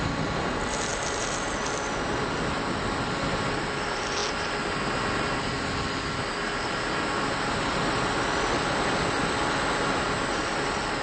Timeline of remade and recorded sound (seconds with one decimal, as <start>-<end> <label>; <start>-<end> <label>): 0.0-11.0 recorded

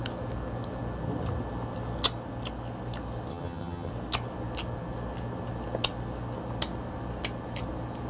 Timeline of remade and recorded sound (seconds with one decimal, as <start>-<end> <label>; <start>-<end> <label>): 0.0-3.3 recorded; 3.3-3.9 remade; 3.9-8.1 recorded

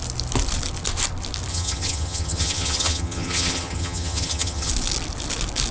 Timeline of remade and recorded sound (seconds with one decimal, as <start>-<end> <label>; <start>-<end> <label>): 0.0-1.5 recorded; 1.5-4.7 remade; 4.7-5.7 recorded

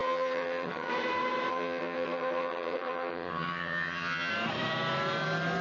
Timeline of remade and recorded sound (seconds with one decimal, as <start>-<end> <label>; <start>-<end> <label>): 0.0-0.9 remade; 0.9-1.5 recorded; 1.5-4.3 remade; 4.3-5.6 recorded

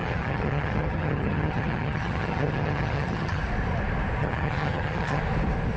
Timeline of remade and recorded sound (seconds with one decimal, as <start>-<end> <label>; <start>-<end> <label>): 0.0-3.4 remade; 3.4-4.2 recorded; 4.2-5.2 remade; 5.2-5.8 recorded

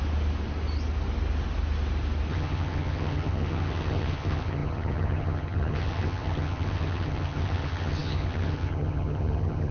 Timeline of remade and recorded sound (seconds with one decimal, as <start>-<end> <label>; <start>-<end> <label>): 0.0-2.3 recorded; 2.3-9.7 remade

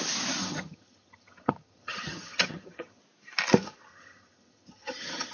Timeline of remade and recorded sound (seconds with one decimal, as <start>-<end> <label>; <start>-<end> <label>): 0.0-0.4 recorded; 0.4-3.0 remade; 3.0-3.9 recorded; 3.9-5.3 remade

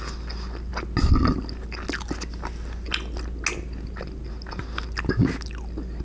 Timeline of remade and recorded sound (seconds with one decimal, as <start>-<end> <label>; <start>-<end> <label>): 0.0-6.0 recorded